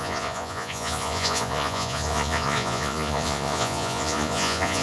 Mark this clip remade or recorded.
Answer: remade